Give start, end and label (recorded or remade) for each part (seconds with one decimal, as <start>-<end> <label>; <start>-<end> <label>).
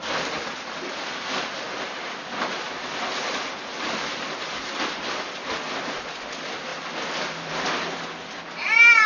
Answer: 0.0-9.1 recorded